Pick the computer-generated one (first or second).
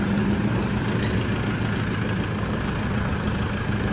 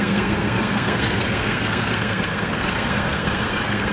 second